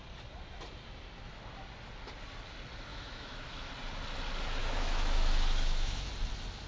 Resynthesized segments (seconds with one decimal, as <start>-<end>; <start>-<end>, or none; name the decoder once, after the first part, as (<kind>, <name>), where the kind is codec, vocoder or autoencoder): 2.9-3.7 (autoencoder, DAC-VAE); 4.6-6.1